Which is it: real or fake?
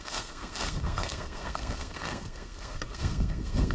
fake